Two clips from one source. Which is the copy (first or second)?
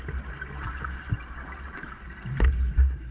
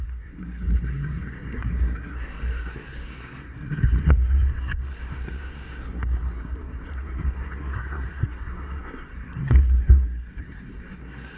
second